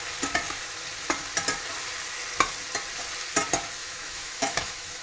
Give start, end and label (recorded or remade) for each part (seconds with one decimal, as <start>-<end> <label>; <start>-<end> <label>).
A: 0.0-3.8 recorded; 3.8-5.0 remade